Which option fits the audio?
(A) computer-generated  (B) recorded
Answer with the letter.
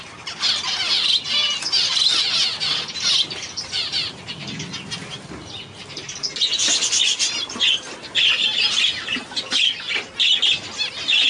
B